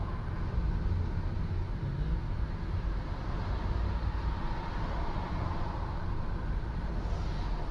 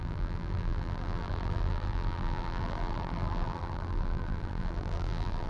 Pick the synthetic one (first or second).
second